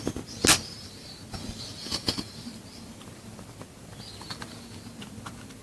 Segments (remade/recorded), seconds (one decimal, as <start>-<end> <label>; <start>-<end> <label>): 0.0-1.8 recorded; 1.8-2.3 remade; 2.3-5.6 recorded